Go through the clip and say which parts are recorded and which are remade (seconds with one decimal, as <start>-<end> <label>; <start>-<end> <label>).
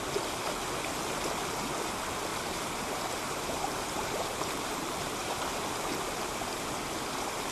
0.0-2.3 recorded; 2.3-5.1 remade; 5.1-7.5 recorded